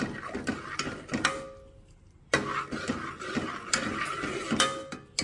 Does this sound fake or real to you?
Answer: real